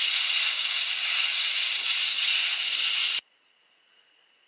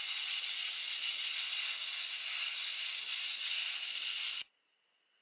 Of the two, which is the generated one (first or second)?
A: first